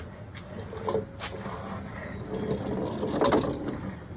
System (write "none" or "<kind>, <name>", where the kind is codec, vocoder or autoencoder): none